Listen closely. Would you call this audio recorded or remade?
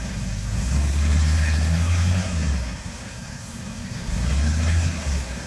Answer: remade